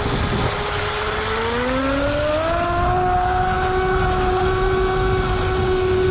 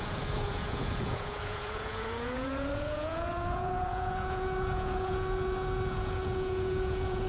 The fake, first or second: second